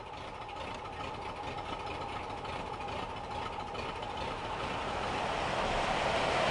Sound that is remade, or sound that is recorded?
recorded